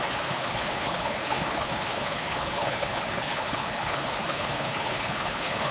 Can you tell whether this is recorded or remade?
remade